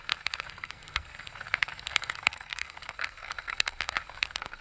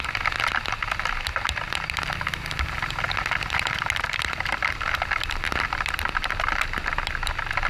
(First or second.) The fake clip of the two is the first